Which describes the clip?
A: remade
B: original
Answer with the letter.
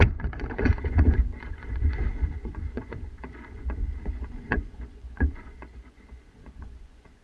A